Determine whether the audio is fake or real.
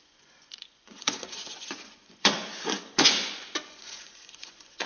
fake